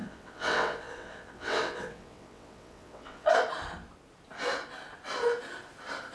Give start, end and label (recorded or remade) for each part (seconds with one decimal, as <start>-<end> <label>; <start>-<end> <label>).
0.0-3.3 remade; 3.3-6.1 recorded